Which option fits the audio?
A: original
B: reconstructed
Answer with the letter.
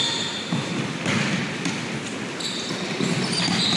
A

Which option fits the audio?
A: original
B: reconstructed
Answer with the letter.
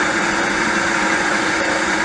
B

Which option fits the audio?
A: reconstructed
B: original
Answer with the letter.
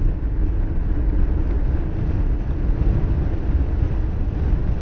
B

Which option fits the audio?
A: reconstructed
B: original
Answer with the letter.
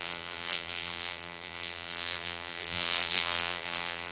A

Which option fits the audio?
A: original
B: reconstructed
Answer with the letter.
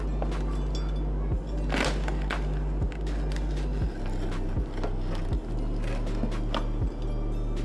A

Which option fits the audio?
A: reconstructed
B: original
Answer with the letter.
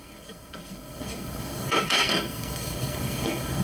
A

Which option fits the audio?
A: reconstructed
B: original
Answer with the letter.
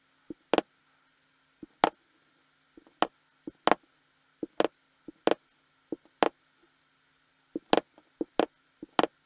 B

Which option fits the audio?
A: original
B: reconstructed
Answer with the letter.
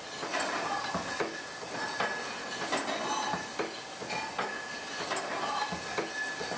A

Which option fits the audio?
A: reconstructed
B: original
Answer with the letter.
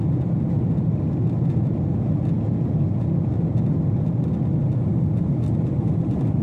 B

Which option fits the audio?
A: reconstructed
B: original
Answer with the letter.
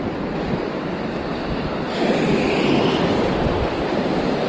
B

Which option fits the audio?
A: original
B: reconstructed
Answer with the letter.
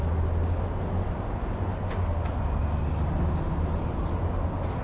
A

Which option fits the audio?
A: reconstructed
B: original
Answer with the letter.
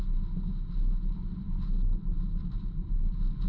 B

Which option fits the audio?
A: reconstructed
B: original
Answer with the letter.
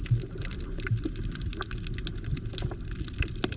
B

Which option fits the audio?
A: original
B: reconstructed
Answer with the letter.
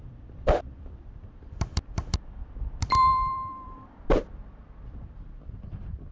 B